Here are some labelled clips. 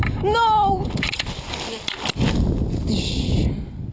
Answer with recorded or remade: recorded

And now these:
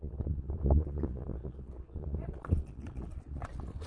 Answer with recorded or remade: remade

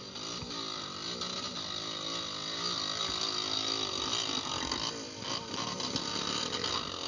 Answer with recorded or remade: recorded